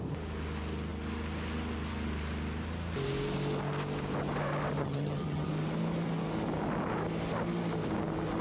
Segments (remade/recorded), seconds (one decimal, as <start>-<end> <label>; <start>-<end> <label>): 0.0-4.8 recorded; 4.8-5.5 remade; 5.5-8.4 recorded